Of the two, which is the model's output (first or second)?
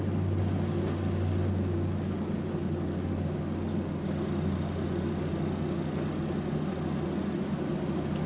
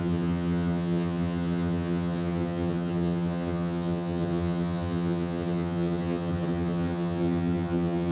second